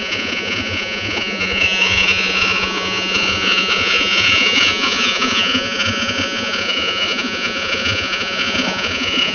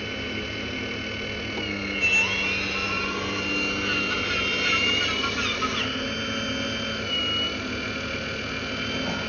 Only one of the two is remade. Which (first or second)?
first